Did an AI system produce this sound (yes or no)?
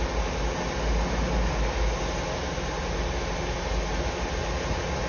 no